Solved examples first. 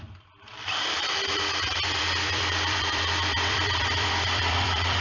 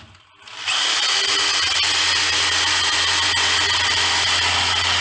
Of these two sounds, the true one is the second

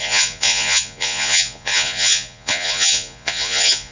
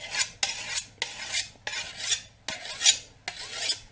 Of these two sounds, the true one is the second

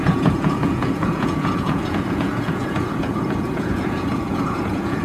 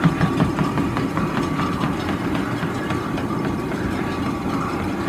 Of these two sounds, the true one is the second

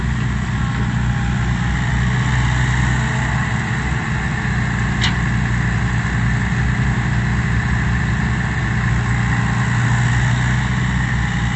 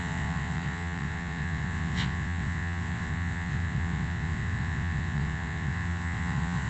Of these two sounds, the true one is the first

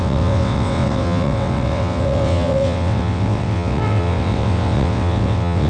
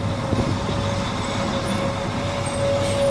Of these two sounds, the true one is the second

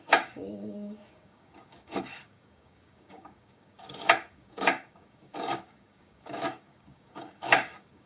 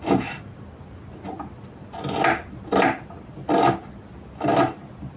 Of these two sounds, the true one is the second